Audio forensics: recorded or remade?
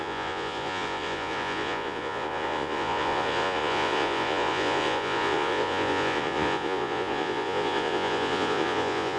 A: remade